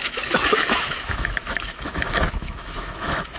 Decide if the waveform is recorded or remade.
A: remade